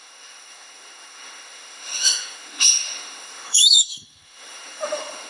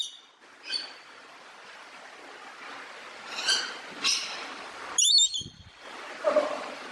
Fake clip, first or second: first